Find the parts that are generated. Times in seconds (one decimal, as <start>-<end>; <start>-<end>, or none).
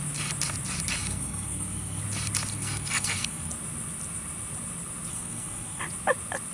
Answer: 1.0-2.0; 2.5-3.5; 5.1-5.8